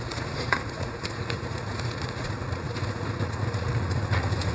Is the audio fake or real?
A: fake